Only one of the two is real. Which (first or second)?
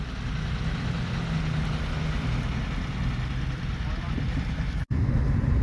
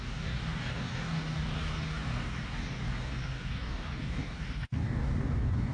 first